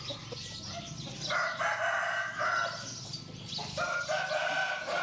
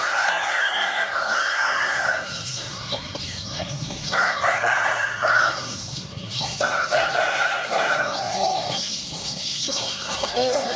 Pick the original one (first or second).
first